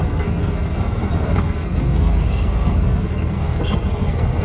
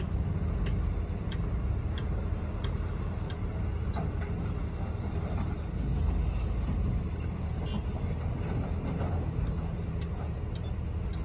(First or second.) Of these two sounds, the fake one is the first